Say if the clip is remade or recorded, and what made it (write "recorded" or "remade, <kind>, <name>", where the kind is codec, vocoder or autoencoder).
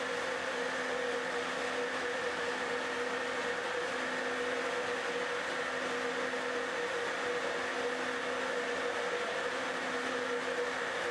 recorded